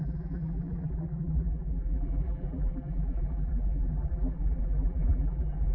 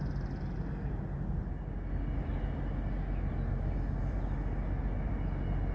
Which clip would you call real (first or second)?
second